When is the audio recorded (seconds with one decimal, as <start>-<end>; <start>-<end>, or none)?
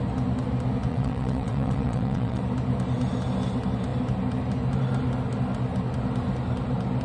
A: 0.0-0.9; 2.4-7.0